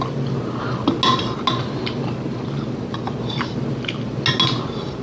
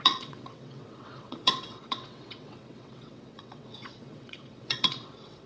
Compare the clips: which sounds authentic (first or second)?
first